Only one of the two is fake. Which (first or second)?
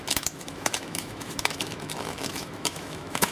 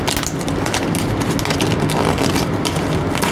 first